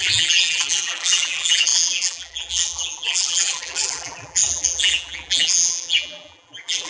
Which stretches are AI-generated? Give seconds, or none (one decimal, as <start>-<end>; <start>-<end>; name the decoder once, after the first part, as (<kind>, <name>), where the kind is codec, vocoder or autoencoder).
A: 0.0-6.9 (vocoder, BigVGAN v2)